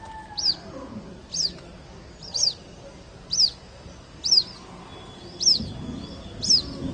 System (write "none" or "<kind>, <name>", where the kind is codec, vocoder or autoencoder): none